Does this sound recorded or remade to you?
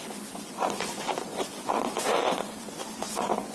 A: remade